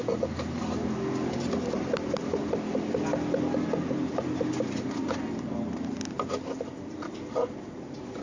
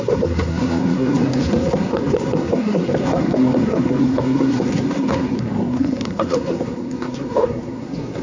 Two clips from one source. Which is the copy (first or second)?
second